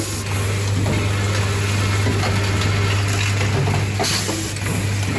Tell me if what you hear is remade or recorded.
recorded